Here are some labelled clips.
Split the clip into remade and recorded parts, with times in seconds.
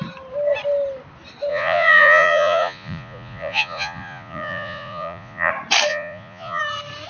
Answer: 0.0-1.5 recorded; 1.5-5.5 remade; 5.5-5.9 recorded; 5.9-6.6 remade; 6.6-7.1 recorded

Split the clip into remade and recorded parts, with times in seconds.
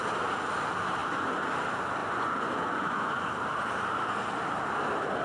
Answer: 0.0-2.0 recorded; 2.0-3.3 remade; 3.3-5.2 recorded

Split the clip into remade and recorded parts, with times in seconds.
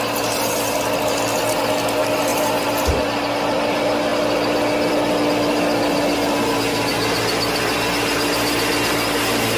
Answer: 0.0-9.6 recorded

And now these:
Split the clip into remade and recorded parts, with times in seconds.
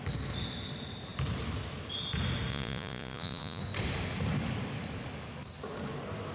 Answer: 0.0-2.5 recorded; 2.5-3.6 remade; 3.6-6.3 recorded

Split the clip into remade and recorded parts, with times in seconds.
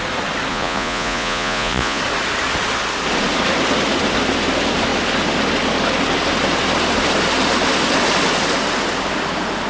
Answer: 0.0-0.5 recorded; 0.5-2.0 remade; 2.0-9.7 recorded